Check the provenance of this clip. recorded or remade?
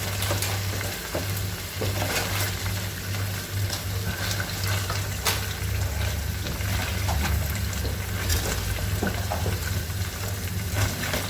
recorded